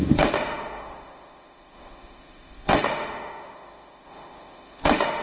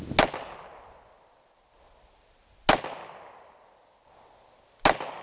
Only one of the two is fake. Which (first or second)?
first